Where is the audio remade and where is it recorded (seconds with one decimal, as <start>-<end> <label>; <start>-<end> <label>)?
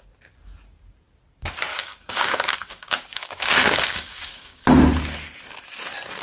0.0-1.7 recorded; 1.7-4.6 remade; 4.6-6.2 recorded